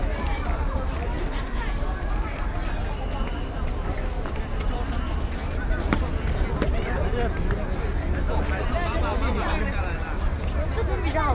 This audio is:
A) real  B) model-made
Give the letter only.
A